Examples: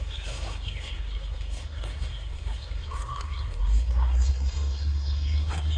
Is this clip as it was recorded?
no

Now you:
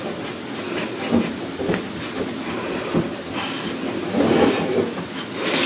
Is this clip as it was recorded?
yes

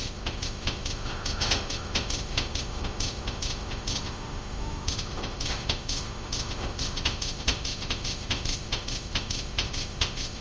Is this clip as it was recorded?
no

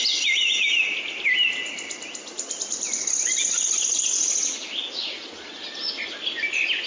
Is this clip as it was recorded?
yes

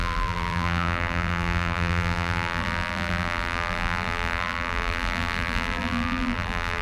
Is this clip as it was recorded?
no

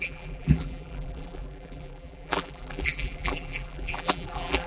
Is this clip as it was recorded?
no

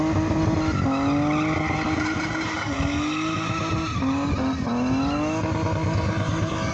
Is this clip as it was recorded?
yes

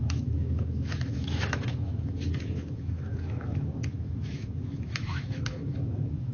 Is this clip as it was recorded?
no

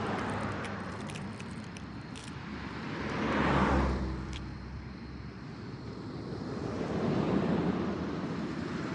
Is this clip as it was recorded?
no